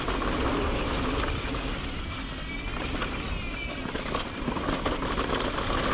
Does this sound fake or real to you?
real